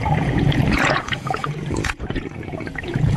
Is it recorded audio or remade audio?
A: remade